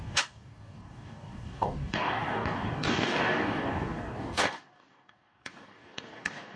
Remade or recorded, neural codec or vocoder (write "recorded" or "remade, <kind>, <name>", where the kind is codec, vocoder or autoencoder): remade, codec, DAC